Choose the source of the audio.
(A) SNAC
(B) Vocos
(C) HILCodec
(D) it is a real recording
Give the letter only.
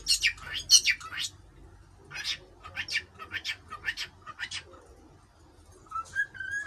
D